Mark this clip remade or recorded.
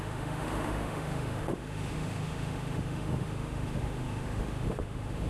remade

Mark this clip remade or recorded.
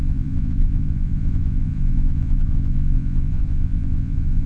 remade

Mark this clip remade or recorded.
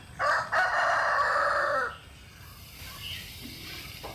recorded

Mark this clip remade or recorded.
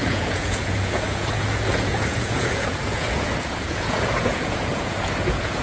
remade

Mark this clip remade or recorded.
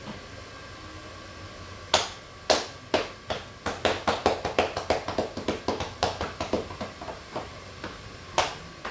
recorded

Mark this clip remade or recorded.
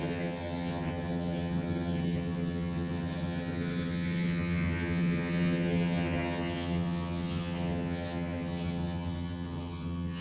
remade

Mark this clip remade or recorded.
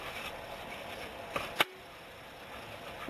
recorded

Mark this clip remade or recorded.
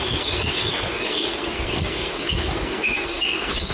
remade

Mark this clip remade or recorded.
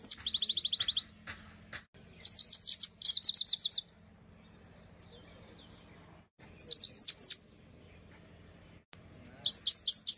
recorded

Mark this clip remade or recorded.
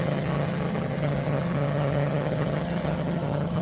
remade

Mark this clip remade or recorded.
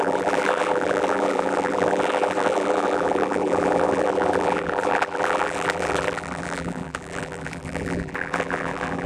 remade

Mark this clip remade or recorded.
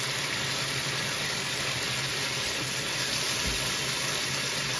recorded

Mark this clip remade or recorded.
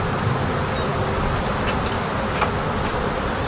recorded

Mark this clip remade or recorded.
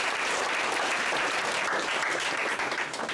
remade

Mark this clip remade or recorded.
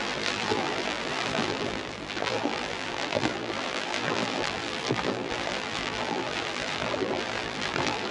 remade